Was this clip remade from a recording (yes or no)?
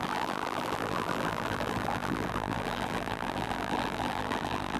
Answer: yes